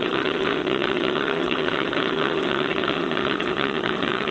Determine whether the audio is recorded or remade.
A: remade